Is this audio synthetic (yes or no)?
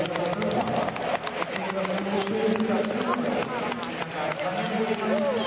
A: no